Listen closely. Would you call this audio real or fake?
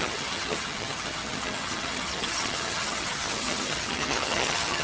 fake